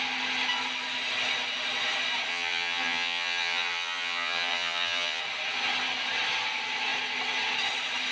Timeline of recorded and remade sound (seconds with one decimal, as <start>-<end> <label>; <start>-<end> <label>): 0.0-2.3 recorded; 2.3-5.2 remade; 5.2-8.1 recorded